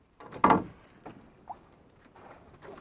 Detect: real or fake real